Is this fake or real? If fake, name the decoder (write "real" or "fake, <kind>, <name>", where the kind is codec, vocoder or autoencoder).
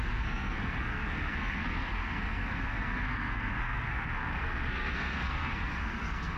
fake, codec, SNAC